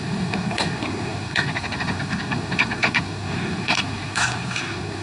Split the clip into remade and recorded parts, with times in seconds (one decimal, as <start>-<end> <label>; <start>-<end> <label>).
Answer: 0.0-5.0 remade